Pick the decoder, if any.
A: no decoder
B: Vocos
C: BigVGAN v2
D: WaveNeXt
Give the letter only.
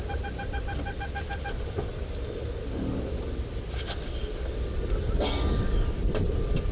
A